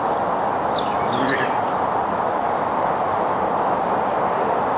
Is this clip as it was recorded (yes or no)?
yes